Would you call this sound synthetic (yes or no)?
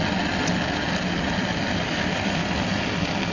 no